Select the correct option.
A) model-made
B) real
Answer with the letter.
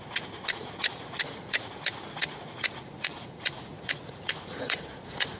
A